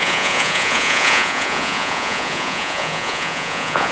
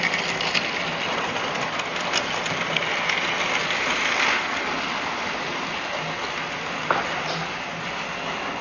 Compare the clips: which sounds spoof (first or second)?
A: first